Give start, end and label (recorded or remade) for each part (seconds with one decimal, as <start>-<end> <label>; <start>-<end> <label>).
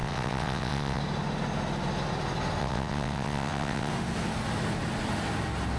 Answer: 0.0-1.0 remade; 1.0-2.6 recorded; 2.6-3.9 remade; 3.9-5.8 recorded